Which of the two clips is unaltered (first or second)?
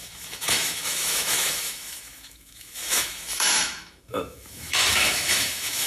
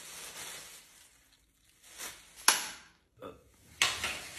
second